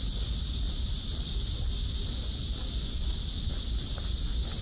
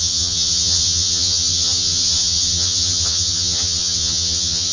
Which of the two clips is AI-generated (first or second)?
second